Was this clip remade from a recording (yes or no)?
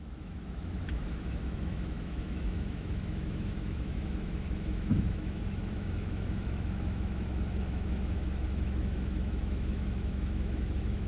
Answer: yes